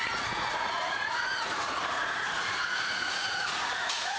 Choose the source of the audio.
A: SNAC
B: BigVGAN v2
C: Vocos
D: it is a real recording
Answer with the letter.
C